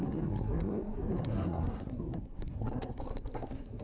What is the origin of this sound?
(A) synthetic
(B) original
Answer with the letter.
A